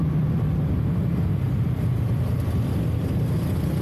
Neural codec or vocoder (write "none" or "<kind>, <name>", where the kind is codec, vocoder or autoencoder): none